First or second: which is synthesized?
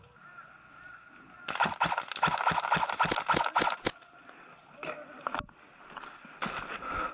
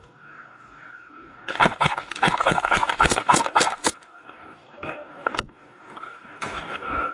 second